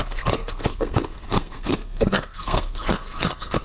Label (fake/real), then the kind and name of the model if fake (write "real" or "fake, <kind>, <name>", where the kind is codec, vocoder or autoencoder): fake, codec, SNAC